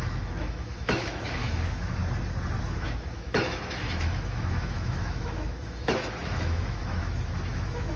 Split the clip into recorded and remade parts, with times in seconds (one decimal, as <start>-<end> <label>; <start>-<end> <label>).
0.0-2.0 remade; 2.0-2.6 recorded; 2.6-8.0 remade